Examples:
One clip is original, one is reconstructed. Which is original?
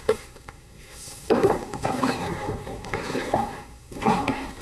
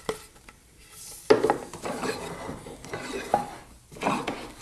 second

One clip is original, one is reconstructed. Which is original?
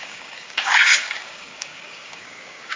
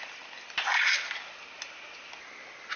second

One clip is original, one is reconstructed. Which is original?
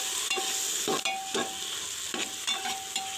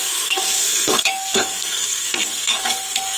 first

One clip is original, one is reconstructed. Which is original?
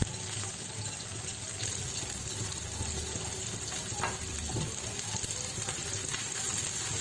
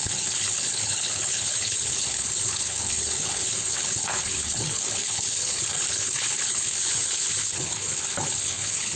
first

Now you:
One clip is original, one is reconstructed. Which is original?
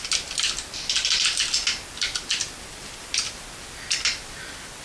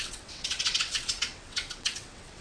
first